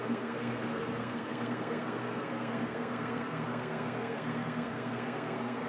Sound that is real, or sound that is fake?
fake